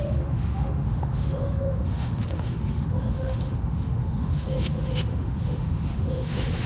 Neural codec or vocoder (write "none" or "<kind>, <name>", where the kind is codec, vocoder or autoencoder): autoencoder, DAC-VAE